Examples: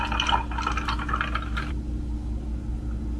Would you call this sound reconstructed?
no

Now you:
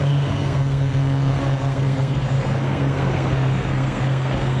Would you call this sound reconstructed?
yes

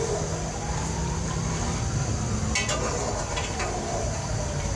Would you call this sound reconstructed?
no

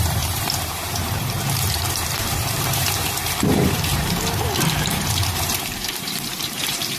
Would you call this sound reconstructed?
yes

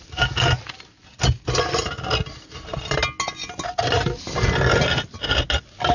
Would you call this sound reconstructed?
no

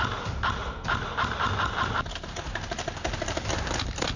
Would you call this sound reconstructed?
no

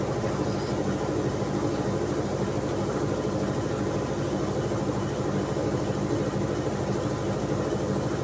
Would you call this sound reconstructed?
no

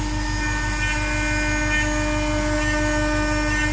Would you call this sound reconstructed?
no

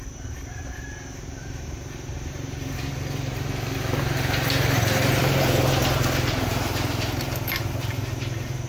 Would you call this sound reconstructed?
yes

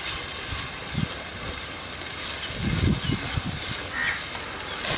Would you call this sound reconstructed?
no